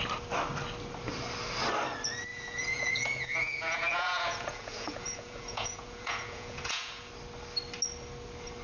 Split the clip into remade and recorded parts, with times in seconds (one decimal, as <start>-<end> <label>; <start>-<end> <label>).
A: 0.0-2.3 recorded; 2.3-7.1 remade; 7.1-8.6 recorded